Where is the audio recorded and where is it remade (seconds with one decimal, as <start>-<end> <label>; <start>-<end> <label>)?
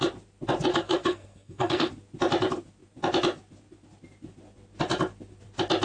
0.0-0.7 recorded; 0.7-1.9 remade; 1.9-5.8 recorded